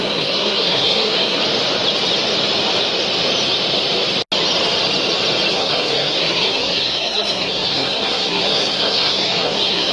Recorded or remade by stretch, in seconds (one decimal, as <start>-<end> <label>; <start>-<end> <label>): 0.0-1.4 remade; 1.4-5.5 recorded; 5.5-9.9 remade